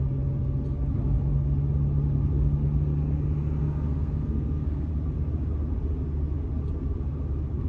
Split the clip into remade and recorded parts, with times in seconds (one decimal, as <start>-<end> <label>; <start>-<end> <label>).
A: 0.0-3.6 recorded; 3.6-4.9 remade; 4.9-7.7 recorded

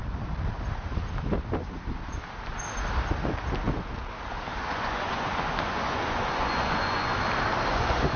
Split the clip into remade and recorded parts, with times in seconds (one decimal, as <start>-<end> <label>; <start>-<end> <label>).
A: 0.0-4.7 recorded; 4.7-7.1 remade; 7.1-7.7 recorded; 7.7-8.2 remade

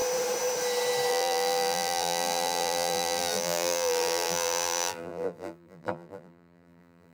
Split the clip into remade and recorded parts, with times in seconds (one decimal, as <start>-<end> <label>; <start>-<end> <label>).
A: 0.0-1.1 recorded; 1.1-7.1 remade